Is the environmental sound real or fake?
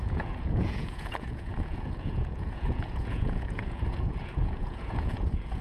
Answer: fake